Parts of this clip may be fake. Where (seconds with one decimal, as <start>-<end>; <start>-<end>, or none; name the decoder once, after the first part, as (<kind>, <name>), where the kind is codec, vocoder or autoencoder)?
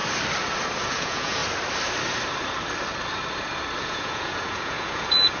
0.9-1.4 (vocoder, Vocos); 3.8-5.4